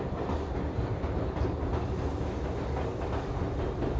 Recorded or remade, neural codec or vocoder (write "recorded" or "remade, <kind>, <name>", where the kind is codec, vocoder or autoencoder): recorded